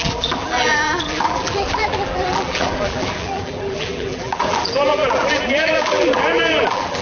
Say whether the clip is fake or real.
fake